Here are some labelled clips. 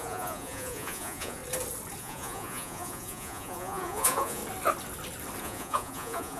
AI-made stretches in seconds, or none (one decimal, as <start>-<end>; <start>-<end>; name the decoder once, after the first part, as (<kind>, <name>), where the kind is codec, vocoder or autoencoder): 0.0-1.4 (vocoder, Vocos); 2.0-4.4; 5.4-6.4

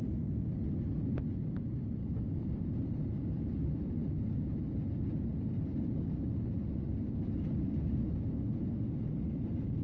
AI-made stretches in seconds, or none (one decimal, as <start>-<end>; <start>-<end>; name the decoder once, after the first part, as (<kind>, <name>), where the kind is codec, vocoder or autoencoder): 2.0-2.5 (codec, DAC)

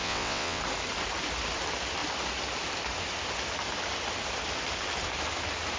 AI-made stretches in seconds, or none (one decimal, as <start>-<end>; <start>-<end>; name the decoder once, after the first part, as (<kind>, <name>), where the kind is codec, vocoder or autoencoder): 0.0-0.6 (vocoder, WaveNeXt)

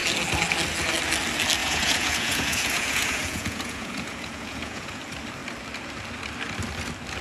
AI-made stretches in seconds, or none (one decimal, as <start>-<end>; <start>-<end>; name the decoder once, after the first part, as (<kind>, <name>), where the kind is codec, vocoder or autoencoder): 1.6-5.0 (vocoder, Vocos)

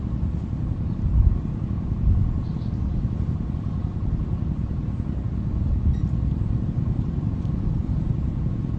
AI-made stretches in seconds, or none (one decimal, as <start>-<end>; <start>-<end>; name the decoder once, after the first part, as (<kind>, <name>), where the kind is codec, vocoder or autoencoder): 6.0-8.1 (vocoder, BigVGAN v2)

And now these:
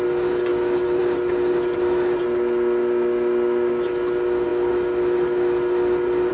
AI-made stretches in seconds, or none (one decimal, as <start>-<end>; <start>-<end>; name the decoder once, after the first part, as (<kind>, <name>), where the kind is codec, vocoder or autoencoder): none